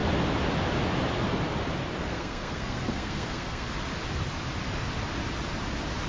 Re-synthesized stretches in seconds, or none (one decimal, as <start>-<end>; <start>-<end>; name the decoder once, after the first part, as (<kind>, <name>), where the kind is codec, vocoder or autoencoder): 2.0-3.7 (codec, SNAC)